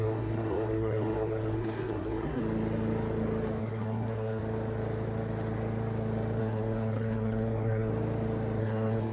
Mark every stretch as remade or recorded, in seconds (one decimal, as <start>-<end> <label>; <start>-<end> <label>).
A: 0.0-2.4 remade; 2.4-3.6 recorded; 3.6-4.4 remade; 4.4-6.4 recorded; 6.4-7.9 remade; 7.9-8.6 recorded; 8.6-9.1 remade